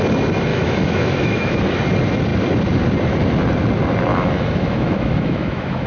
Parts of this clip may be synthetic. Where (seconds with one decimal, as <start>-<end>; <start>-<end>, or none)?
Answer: 0.5-1.6; 4.1-5.9